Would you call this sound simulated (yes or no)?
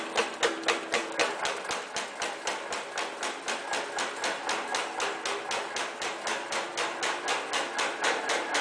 no